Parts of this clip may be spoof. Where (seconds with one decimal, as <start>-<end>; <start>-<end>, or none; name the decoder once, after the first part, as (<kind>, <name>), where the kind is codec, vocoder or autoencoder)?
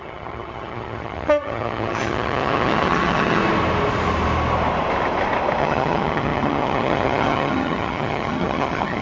0.0-3.4 (vocoder, HiFi-GAN); 5.6-9.0